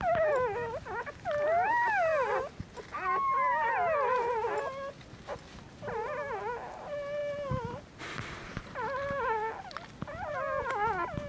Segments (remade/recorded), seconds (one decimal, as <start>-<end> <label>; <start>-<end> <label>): 0.0-11.3 recorded